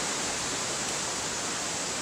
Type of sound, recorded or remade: recorded